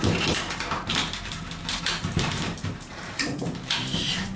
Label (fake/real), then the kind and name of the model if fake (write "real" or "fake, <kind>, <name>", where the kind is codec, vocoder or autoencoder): fake, vocoder, BigVGAN v2